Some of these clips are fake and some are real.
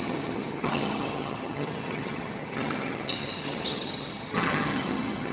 fake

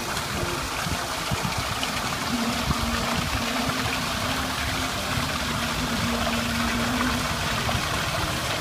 real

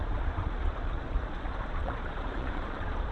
fake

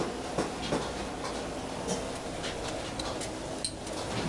real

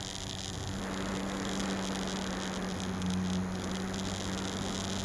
real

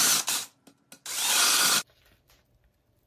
real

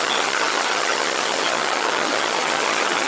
fake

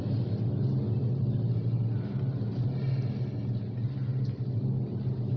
real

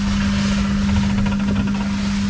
real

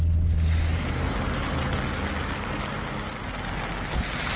real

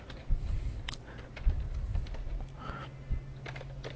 real